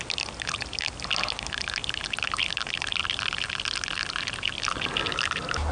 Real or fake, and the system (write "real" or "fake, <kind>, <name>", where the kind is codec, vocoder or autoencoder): real